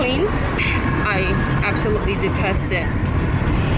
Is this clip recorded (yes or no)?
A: yes